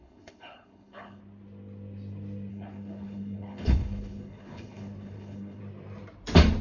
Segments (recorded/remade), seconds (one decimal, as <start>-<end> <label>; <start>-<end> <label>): 0.0-1.2 remade; 1.2-2.5 recorded; 2.5-5.6 remade; 5.6-6.6 recorded